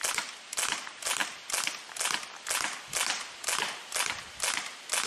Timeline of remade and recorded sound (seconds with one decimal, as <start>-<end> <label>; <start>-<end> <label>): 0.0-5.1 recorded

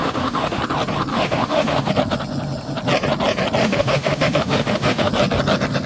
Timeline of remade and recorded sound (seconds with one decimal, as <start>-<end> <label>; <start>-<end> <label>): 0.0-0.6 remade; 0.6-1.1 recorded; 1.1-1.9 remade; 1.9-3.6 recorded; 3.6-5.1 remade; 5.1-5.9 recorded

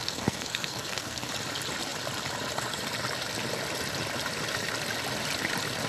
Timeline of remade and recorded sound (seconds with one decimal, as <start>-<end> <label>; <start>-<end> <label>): 0.0-1.3 remade; 1.3-5.9 recorded